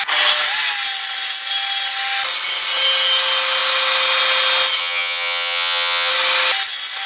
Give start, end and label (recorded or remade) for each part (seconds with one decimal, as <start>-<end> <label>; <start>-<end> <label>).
0.0-4.8 recorded; 4.8-6.1 remade; 6.1-7.1 recorded